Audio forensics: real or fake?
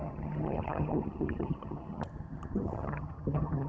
fake